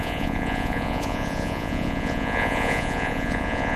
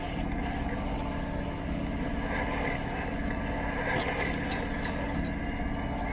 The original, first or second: second